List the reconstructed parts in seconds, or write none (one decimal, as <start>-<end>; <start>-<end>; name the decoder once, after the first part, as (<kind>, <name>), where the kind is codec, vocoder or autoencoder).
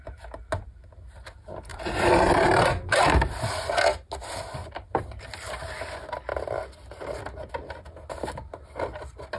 1.7-3.3 (vocoder, BigVGAN v2); 4.6-5.2